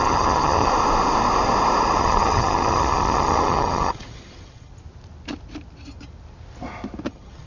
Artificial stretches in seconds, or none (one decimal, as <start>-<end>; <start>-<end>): 0.0-0.7; 2.0-4.7; 7.1-7.5